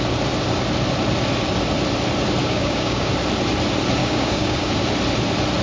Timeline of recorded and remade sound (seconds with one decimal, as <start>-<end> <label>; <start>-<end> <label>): 0.0-2.4 recorded; 2.4-3.1 remade; 3.1-4.0 recorded; 4.0-4.7 remade; 4.7-5.6 recorded